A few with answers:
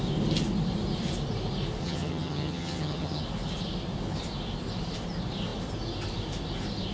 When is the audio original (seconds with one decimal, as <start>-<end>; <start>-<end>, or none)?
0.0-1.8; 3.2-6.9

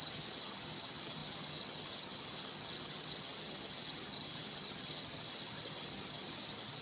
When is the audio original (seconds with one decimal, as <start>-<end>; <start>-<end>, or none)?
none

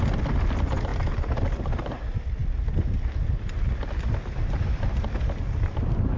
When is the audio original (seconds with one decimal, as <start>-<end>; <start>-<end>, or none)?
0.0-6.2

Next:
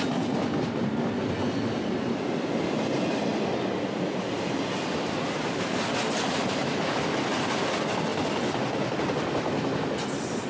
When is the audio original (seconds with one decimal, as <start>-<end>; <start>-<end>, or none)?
0.0-10.5

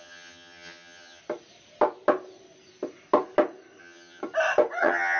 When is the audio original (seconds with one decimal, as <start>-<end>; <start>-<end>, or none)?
1.2-3.8; 4.2-4.8

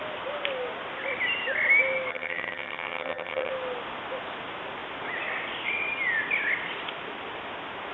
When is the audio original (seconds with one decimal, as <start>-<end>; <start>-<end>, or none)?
0.0-2.1; 3.5-7.9

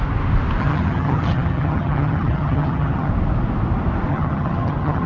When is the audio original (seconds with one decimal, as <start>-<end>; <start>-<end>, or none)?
0.0-0.6; 3.1-4.1

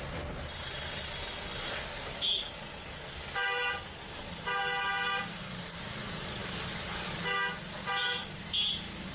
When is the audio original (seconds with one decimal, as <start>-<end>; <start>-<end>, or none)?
0.0-9.1